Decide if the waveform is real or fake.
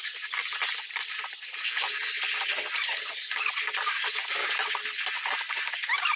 real